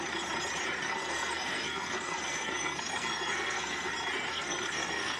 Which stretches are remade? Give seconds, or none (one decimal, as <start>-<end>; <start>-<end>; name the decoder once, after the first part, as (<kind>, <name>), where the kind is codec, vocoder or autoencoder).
0.8-3.9 (codec, SNAC); 4.3-5.2